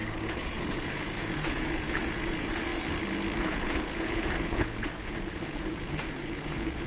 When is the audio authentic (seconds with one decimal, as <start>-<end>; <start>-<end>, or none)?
2.7-3.4